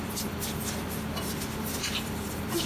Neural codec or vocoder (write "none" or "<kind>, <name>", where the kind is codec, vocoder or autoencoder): vocoder, BigVGAN v2